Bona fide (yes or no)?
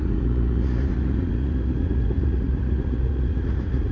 no